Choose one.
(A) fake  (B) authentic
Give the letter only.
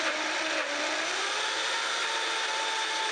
B